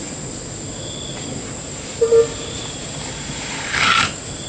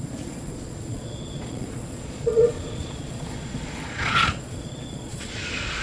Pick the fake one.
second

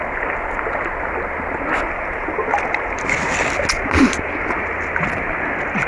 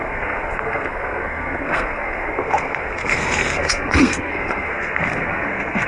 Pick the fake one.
second